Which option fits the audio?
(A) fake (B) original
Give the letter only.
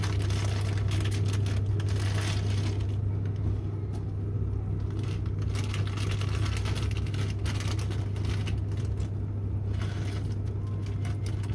B